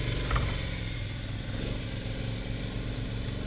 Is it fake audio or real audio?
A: real